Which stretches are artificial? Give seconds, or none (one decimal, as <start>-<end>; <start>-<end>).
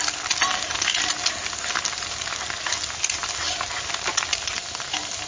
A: none